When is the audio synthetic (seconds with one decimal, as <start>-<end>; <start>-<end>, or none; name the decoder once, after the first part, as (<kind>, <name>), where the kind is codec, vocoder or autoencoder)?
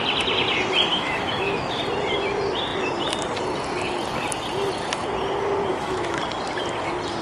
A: 0.9-1.8 (autoencoder, DAC-VAE); 5.7-6.2